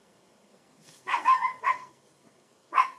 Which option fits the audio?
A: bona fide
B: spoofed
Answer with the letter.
B